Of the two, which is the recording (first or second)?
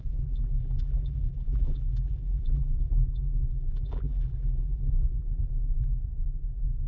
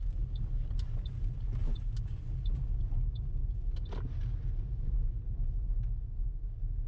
second